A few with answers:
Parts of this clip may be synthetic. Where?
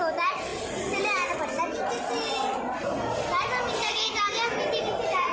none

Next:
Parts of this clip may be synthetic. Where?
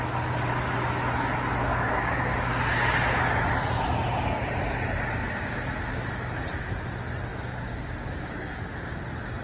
1.6-2.6 (codec, DAC); 7.3-9.0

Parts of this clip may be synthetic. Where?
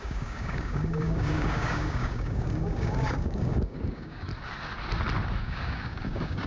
0.0-4.3 (codec, DAC); 5.4-6.5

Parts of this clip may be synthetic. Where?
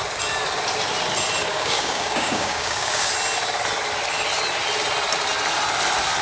1.5-3.1 (codec, DAC)